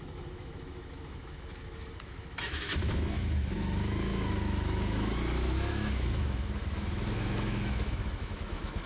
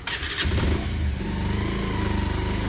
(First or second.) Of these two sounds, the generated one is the first